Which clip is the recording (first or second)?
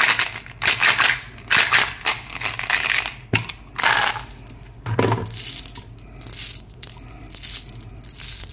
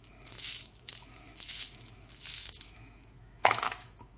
first